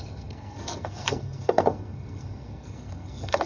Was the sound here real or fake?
fake